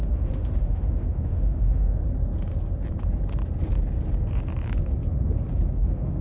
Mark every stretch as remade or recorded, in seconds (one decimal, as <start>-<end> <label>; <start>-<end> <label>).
0.0-2.0 remade; 2.0-5.7 recorded; 5.7-6.2 remade